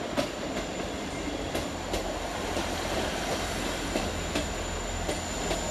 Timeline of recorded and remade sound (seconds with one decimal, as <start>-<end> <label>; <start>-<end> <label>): 0.0-0.7 recorded; 0.7-4.1 remade; 4.1-5.7 recorded